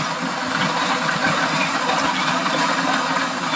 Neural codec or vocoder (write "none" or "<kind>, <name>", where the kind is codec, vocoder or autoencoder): none